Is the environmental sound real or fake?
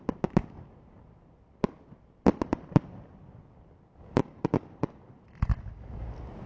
real